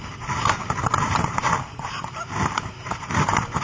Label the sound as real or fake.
fake